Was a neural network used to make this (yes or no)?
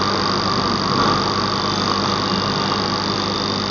no